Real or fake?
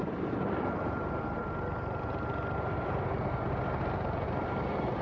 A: fake